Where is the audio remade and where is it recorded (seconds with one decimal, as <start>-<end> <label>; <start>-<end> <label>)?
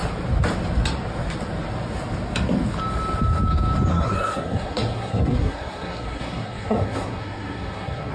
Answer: 0.0-3.9 recorded; 3.9-8.1 remade